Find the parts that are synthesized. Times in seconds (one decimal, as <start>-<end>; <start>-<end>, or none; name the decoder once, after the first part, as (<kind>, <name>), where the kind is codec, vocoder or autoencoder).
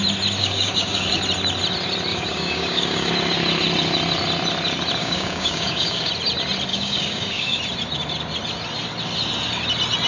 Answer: 0.4-1.2 (codec, DAC); 2.1-3.1; 5.0-6.1; 6.7-7.6